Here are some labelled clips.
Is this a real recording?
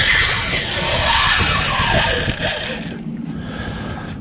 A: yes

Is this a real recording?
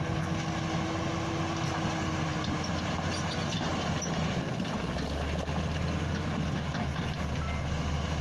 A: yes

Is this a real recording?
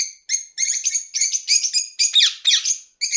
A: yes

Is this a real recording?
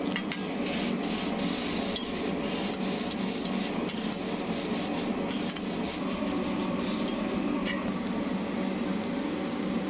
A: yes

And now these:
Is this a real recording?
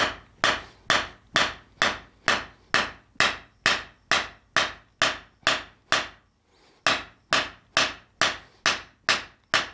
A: yes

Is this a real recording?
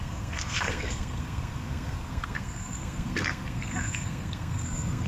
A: no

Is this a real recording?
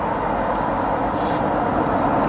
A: yes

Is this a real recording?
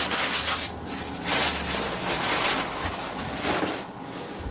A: yes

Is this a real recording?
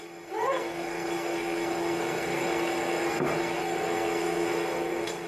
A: no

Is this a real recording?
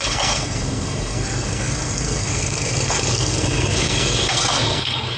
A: no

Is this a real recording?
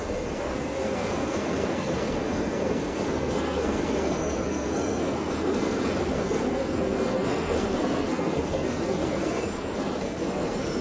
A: no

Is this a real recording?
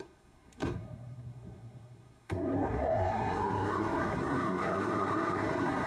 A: no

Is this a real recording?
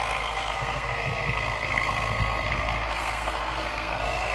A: no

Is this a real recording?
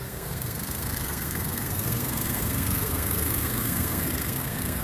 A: no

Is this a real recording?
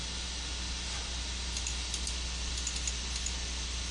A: yes